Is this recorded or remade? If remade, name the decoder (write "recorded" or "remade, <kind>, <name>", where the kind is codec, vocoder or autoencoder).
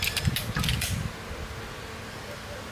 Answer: recorded